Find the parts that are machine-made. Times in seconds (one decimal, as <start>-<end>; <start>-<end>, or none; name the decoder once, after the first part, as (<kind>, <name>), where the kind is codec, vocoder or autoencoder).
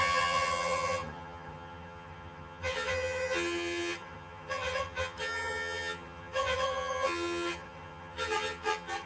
0.0-9.1 (vocoder, HiFi-GAN)